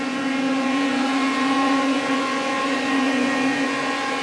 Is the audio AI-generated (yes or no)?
yes